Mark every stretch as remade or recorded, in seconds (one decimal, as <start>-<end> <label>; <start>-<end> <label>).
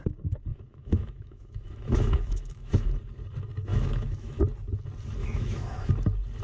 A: 0.0-0.5 recorded; 0.5-2.9 remade; 2.9-3.7 recorded; 3.7-4.4 remade; 4.4-5.2 recorded; 5.2-5.9 remade; 5.9-6.4 recorded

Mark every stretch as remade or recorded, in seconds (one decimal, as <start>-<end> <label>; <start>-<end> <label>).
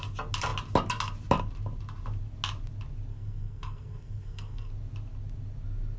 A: 0.0-3.1 recorded; 3.1-4.7 remade; 4.7-6.0 recorded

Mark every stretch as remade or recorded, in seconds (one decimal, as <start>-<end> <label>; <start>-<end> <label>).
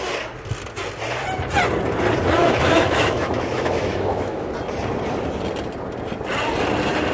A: 0.0-2.4 recorded; 2.4-4.5 remade; 4.5-7.1 recorded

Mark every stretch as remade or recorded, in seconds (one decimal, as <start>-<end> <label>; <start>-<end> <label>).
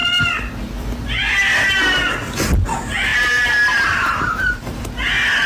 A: 0.0-3.1 recorded; 3.1-4.8 remade; 4.8-5.5 recorded